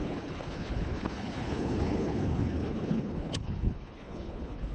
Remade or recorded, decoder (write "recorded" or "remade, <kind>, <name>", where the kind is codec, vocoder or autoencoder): remade, codec, HILCodec